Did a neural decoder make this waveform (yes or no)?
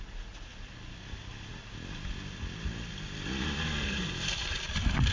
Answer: no